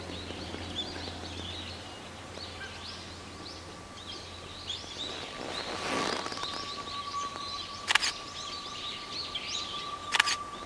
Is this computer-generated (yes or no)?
no